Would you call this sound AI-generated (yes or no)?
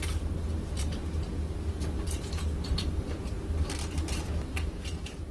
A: no